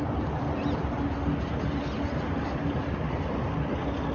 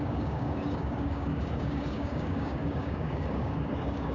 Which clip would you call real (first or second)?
first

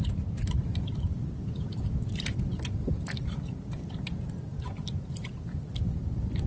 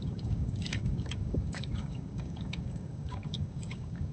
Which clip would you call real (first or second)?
first